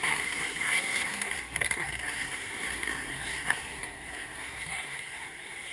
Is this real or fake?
fake